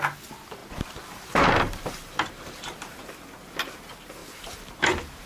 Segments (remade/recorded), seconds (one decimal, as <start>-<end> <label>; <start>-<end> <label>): 0.0-0.6 recorded; 0.6-3.0 remade; 3.0-4.2 recorded; 4.2-4.8 remade; 4.8-5.3 recorded